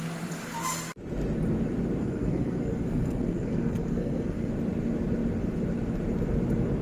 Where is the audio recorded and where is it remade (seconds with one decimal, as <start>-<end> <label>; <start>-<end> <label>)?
0.0-2.0 recorded; 2.0-4.5 remade; 4.5-6.8 recorded